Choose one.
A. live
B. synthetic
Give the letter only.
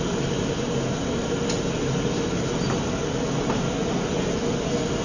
A